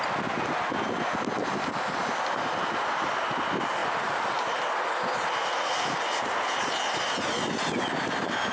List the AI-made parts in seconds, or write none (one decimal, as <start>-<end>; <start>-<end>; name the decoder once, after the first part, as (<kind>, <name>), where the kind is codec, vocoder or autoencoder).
1.4-1.9 (vocoder, BigVGAN v2); 3.8-4.6